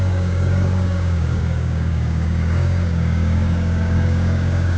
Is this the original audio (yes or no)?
no